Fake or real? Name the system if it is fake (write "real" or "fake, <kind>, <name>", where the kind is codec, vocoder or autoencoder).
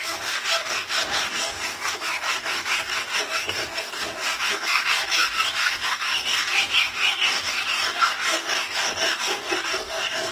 fake, codec, DAC